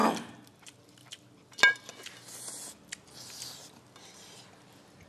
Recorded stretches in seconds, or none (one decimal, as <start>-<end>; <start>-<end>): 0.0-5.1